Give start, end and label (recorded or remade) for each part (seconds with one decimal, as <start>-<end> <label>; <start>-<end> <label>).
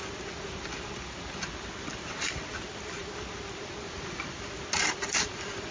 0.0-5.7 recorded